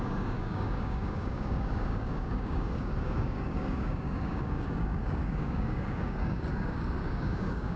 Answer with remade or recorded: remade